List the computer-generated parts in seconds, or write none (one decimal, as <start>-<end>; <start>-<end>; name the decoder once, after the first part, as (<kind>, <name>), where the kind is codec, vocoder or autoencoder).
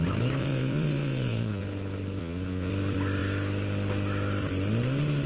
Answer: 0.4-1.6 (vocoder, Vocos); 2.2-2.7